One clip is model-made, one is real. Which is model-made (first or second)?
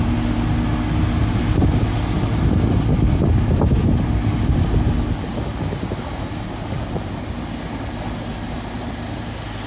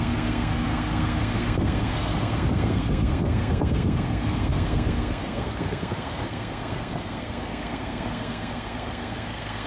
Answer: second